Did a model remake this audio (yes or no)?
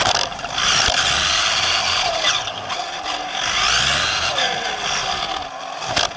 no